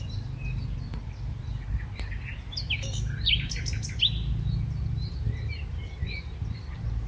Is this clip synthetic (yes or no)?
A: no